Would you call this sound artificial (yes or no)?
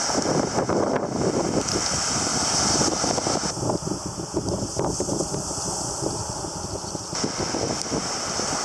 no